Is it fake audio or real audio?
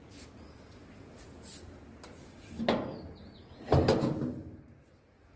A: real